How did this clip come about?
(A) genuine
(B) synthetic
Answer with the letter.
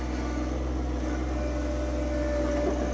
A